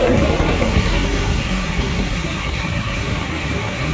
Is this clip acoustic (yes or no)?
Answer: no